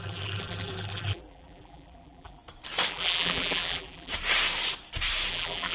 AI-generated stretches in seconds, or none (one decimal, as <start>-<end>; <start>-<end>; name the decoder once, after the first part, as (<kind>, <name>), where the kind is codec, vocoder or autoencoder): 0.0-2.4 (vocoder, BigVGAN v2); 2.9-4.1; 5.3-5.7